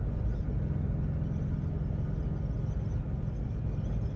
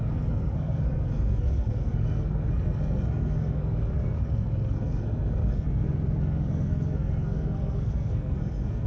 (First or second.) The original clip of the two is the first